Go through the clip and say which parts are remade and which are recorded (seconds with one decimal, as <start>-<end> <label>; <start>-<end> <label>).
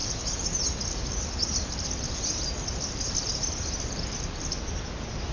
0.0-5.3 recorded